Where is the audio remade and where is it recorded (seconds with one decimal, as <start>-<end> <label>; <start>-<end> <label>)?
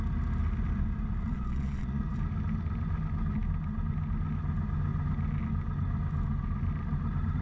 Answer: 0.0-1.3 recorded; 1.3-2.0 remade; 2.0-7.4 recorded